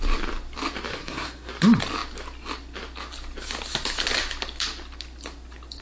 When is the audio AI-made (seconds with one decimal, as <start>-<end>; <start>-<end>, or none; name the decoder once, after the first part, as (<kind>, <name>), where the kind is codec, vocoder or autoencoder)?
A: 0.9-1.5 (codec, SNAC)